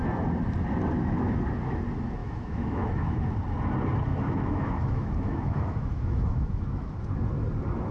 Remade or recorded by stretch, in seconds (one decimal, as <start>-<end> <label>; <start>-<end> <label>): 0.0-2.2 recorded; 2.2-3.2 remade; 3.2-4.1 recorded; 4.1-6.9 remade; 6.9-7.9 recorded